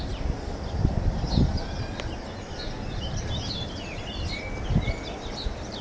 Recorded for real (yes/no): yes